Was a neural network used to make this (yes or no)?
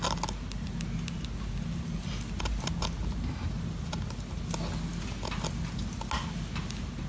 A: no